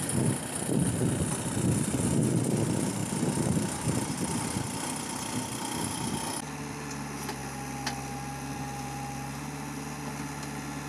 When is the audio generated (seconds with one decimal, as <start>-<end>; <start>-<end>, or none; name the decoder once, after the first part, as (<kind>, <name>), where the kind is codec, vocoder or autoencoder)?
3.0-4.2 (vocoder, BigVGAN v2)